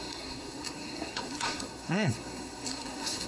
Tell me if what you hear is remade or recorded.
remade